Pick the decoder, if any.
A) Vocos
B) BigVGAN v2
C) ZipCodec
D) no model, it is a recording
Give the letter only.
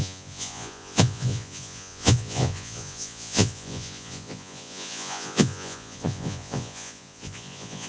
A